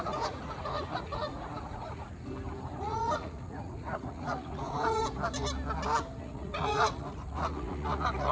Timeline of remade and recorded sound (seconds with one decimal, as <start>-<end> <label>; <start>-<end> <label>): 0.0-2.1 remade; 2.1-2.8 recorded; 2.8-5.0 remade; 5.0-6.2 recorded; 6.2-8.3 remade

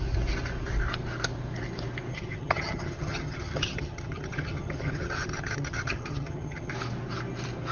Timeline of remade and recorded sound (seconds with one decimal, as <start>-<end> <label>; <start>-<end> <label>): 0.0-2.1 recorded; 2.1-6.7 remade; 6.7-7.7 recorded

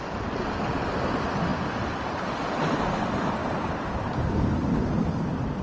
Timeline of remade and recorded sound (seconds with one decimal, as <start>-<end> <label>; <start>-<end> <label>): 0.0-3.4 recorded; 3.4-5.6 remade

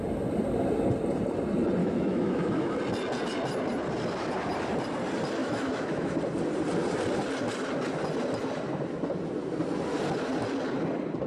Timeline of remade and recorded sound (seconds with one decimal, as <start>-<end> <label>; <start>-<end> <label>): 0.0-1.8 recorded; 1.8-2.8 remade; 2.8-5.4 recorded; 5.4-6.1 remade; 6.1-11.3 recorded

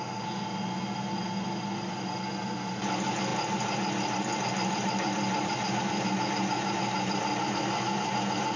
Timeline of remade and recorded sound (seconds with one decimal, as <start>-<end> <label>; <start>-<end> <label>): 0.0-8.6 recorded

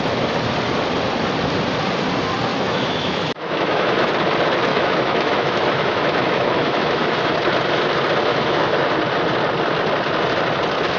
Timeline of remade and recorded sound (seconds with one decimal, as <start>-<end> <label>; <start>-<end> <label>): 0.0-2.5 recorded; 2.5-4.1 remade; 4.1-4.7 recorded; 4.7-7.3 remade; 7.3-8.3 recorded; 8.3-8.9 remade; 8.9-11.0 recorded

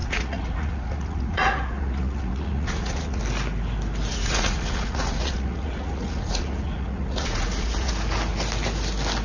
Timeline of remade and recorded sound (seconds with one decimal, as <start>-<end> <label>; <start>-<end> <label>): 0.0-3.2 remade; 3.2-4.1 recorded; 4.1-7.9 remade; 7.9-9.2 recorded